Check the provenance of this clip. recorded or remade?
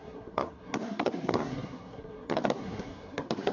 remade